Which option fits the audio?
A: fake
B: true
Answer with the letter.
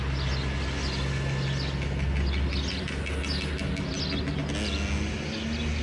B